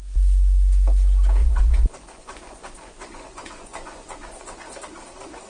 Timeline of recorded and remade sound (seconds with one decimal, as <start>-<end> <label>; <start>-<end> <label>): 0.0-1.4 recorded; 1.4-4.7 remade; 4.7-5.5 recorded